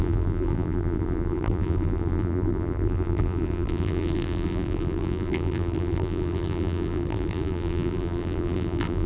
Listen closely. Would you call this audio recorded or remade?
remade